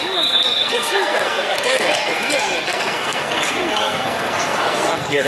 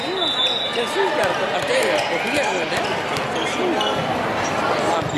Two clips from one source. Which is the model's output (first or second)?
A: first